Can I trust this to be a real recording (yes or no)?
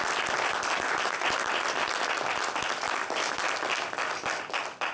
yes